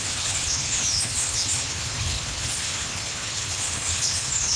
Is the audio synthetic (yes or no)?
yes